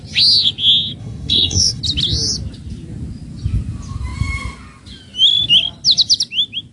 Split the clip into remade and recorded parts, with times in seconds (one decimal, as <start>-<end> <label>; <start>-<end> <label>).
0.0-1.0 recorded; 1.0-1.8 remade; 1.8-6.7 recorded